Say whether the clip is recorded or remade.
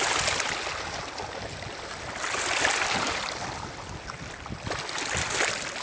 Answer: recorded